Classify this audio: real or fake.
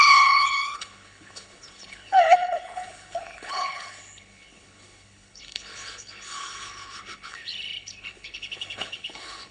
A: fake